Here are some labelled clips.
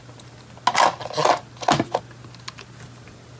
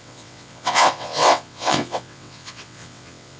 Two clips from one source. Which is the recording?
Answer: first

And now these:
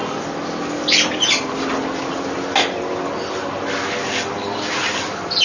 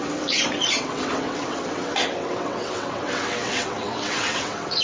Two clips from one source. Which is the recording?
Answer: first